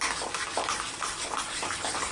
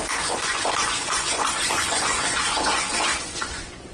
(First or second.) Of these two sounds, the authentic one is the first